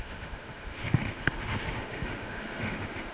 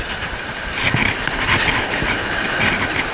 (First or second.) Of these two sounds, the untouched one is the second